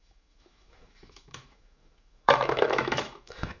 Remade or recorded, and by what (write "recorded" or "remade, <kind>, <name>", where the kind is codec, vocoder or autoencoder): remade, autoencoder, DAC-VAE